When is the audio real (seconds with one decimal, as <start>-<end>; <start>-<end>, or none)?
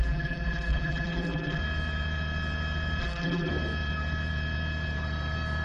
1.6-3.0; 3.5-5.6